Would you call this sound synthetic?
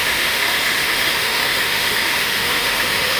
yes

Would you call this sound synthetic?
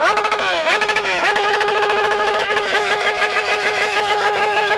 yes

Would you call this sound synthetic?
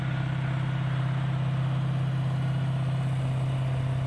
no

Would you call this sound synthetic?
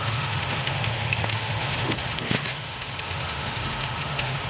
yes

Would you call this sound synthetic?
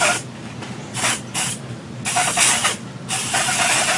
no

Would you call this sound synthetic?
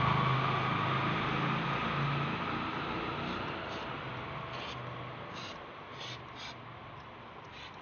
no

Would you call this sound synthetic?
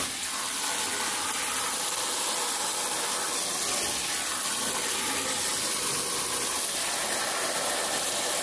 no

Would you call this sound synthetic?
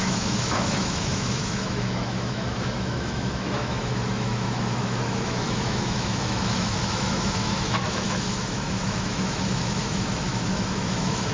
yes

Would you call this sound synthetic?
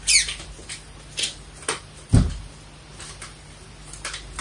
no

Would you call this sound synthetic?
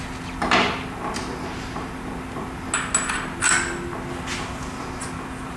no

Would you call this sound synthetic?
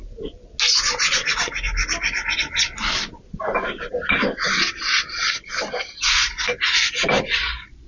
no